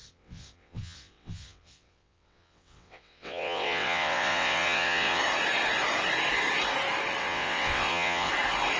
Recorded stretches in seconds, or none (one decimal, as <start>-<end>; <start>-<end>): 5.2-7.2; 8.3-8.8